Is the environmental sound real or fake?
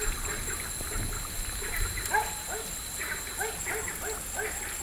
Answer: real